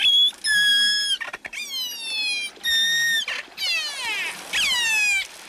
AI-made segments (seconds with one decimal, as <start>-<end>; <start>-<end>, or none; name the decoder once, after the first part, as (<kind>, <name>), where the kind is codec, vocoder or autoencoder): none

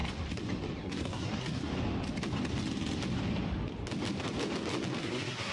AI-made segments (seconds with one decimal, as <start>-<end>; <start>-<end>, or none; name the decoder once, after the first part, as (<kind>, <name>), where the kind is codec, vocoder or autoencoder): 0.8-1.7 (codec, SNAC); 5.0-5.5

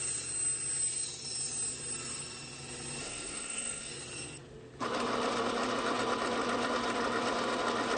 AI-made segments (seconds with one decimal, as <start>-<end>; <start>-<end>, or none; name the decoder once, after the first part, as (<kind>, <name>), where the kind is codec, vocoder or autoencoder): 3.0-3.9 (codec, SNAC)